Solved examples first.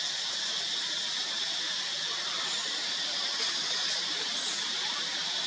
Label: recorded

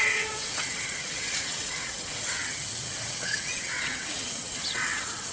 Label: remade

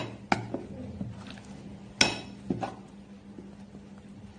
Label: recorded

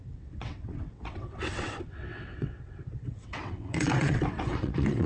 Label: remade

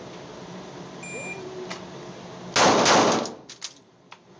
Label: recorded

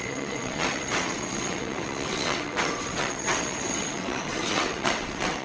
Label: remade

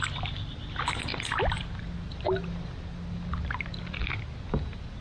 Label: recorded